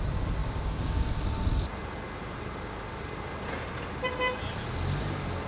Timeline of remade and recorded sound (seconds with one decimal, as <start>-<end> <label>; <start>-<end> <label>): 0.0-0.4 recorded; 0.4-1.2 remade; 1.2-5.5 recorded